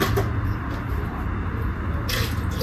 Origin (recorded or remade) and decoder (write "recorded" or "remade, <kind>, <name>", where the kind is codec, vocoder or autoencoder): recorded